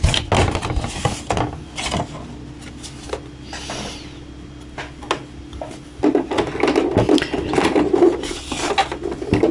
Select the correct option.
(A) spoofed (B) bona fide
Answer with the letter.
B